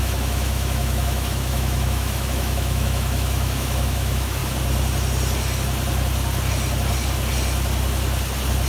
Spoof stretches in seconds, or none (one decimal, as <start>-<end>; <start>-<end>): 0.0-4.4